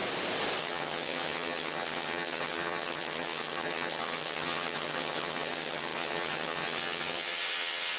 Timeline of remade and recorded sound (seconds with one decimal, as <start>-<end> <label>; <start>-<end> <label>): 0.0-0.6 recorded; 0.6-8.0 remade